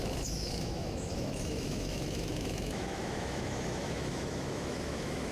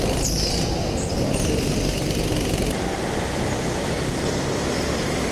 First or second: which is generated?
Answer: first